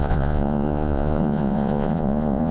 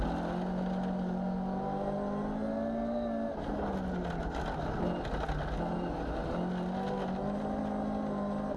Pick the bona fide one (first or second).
second